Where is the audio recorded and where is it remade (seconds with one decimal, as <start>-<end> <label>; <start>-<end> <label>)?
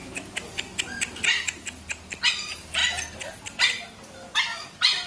0.0-5.1 recorded